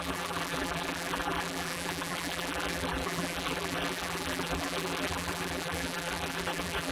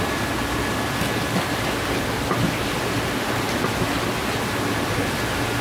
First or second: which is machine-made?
first